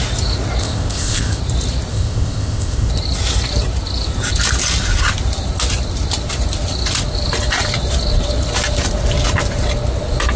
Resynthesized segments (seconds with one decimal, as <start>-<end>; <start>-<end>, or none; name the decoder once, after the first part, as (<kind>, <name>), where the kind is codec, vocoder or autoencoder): 0.6-1.4 (codec, ZipCodec); 1.9-2.9